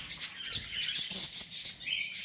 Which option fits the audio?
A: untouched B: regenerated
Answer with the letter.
A